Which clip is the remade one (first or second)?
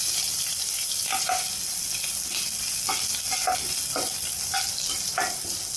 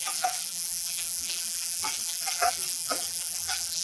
second